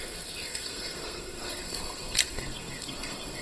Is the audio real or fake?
fake